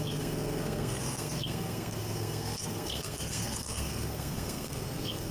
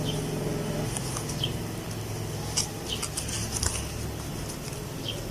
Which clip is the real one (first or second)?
second